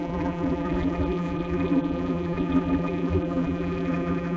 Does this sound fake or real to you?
fake